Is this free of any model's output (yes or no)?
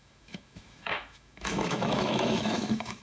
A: no